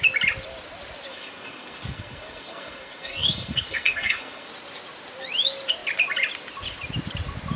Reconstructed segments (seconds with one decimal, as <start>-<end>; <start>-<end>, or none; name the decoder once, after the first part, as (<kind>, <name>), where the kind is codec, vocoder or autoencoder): 1.1-4.5 (codec, SNAC)